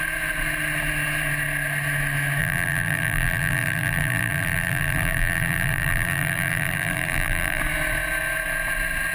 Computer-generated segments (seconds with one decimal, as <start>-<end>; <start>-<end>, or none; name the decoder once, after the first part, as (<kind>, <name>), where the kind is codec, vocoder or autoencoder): 2.4-7.6 (vocoder, BigVGAN v2)